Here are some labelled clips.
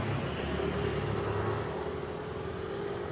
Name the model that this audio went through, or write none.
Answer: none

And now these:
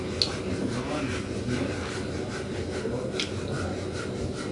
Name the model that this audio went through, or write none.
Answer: none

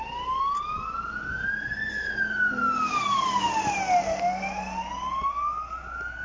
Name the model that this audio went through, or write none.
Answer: none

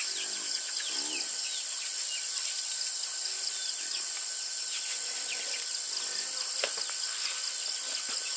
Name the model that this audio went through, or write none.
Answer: none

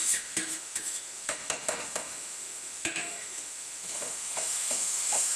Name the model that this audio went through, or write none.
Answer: autoencoder, DAC-VAE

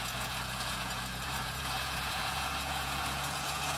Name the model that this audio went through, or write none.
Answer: vocoder, Vocos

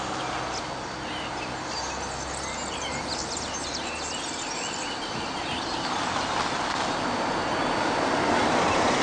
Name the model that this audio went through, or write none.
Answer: none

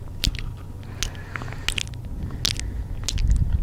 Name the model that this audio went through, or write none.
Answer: none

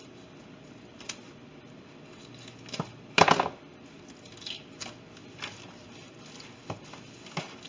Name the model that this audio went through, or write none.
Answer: none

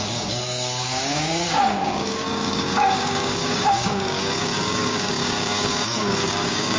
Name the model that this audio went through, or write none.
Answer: codec, DAC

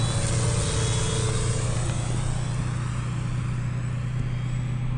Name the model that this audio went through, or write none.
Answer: none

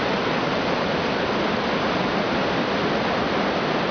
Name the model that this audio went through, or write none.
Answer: none